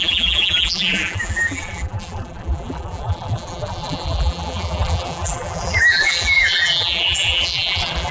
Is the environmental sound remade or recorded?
remade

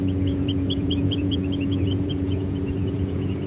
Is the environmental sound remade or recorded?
remade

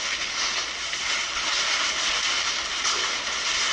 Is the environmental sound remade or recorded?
recorded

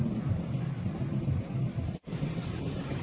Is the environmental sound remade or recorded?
recorded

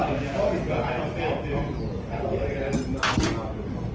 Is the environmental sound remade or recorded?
recorded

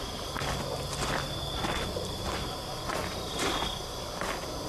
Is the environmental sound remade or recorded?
recorded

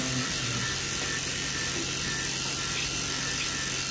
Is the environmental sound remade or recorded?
recorded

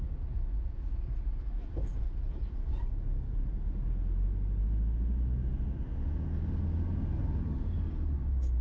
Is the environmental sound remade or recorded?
recorded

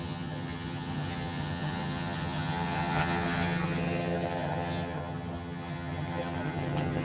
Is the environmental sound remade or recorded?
remade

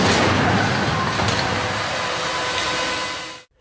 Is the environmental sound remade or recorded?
recorded